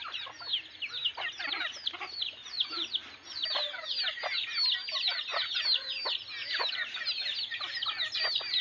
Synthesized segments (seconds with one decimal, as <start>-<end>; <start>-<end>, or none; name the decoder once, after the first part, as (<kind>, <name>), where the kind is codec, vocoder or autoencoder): none